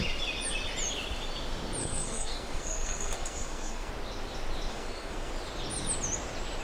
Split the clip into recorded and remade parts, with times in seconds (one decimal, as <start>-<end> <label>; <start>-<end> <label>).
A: 0.0-1.8 recorded; 1.8-3.9 remade; 3.9-4.7 recorded; 4.7-5.3 remade; 5.3-6.6 recorded